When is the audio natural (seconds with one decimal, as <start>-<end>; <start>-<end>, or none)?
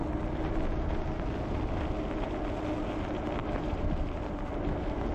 0.0-3.4; 4.5-5.1